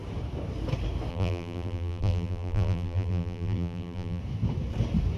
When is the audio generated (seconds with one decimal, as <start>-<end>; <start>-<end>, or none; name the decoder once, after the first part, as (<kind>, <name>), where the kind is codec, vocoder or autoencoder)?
1.1-4.2 (vocoder, BigVGAN v2)